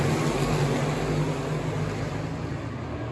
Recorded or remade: recorded